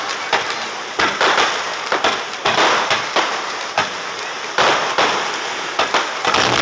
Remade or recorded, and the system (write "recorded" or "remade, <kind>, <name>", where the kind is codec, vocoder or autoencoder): recorded